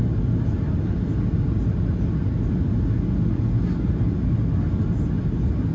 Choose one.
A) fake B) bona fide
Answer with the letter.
B